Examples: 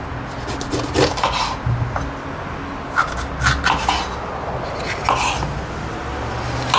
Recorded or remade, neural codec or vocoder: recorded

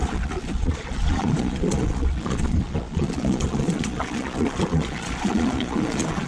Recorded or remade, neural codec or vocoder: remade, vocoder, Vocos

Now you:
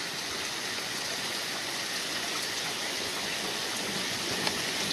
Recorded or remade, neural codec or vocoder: remade, vocoder, Vocos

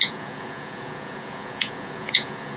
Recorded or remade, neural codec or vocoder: remade, vocoder, Vocos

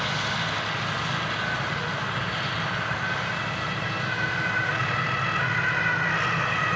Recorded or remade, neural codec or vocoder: recorded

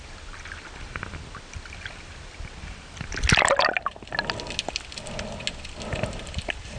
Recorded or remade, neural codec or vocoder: recorded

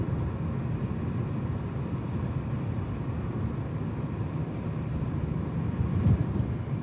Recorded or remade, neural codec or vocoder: recorded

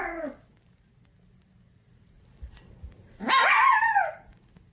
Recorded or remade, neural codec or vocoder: recorded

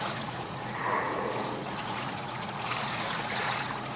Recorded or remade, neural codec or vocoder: remade, vocoder, Vocos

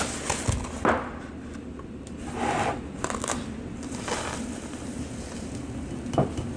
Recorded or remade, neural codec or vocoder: recorded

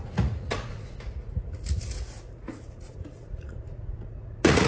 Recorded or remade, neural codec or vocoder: remade, vocoder, Vocos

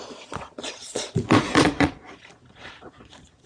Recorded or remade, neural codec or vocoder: remade, vocoder, Vocos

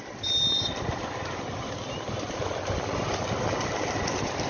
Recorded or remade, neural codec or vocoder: recorded